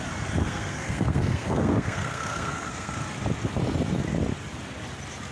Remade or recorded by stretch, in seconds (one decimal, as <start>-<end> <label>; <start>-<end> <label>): 0.0-0.4 recorded; 0.4-2.9 remade; 2.9-5.3 recorded